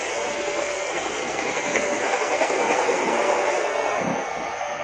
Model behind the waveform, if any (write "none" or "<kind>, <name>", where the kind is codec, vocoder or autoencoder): codec, SNAC